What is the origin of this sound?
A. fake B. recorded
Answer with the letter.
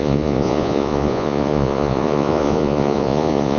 A